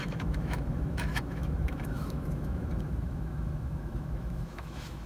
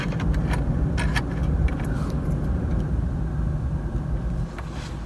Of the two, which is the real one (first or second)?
second